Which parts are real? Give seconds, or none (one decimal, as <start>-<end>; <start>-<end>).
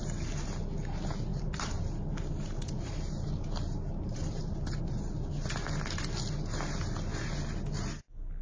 0.0-1.3; 4.5-8.4